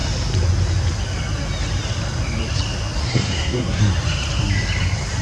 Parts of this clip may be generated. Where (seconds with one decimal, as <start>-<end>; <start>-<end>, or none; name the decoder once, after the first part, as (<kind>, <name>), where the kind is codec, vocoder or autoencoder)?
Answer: 3.0-3.8 (codec, SNAC)